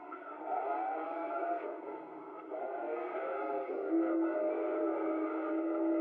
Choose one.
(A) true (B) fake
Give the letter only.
B